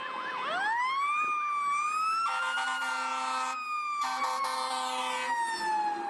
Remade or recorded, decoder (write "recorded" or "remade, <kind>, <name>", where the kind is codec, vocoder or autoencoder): recorded